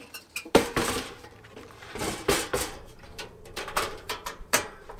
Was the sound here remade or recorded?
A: remade